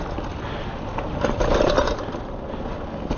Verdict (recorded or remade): recorded